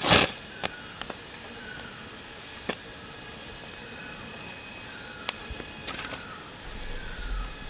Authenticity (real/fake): real